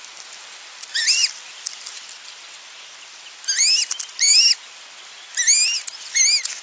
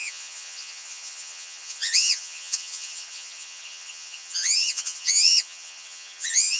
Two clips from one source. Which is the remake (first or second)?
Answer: second